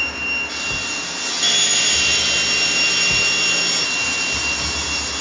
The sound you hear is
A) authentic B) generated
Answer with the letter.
A